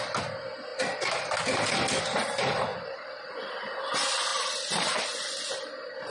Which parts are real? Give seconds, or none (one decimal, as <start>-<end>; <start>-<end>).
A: 0.0-4.3; 5.5-6.1